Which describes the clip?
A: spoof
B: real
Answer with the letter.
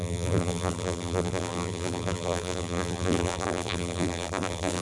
A